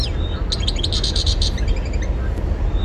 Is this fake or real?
real